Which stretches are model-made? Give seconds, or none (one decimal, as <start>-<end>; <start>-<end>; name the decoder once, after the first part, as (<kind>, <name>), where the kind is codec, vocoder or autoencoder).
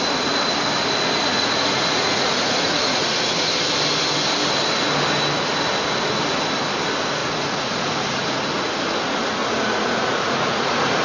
1.3-3.5 (vocoder, Vocos); 7.2-8.8; 9.4-11.0